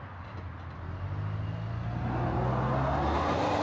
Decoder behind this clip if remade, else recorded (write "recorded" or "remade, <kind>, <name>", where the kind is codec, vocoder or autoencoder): recorded